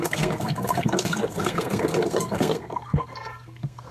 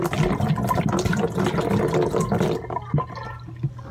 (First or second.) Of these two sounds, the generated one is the first